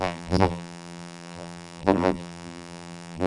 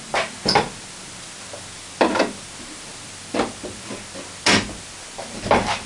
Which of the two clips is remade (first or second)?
first